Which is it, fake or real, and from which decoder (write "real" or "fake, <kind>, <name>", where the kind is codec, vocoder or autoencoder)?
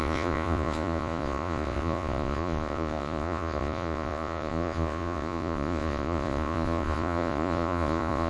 fake, vocoder, Vocos